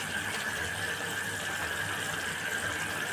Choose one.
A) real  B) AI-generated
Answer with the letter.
A